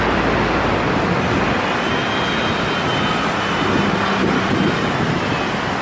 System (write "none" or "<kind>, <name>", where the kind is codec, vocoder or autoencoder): none